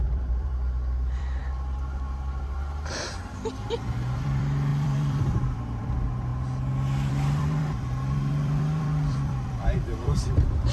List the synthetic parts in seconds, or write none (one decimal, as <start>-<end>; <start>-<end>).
0.0-1.4; 3.7-6.3; 7.1-10.7